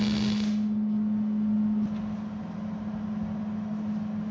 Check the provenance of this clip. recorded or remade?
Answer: recorded